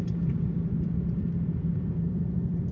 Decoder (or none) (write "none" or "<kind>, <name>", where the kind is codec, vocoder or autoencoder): vocoder, BigVGAN v2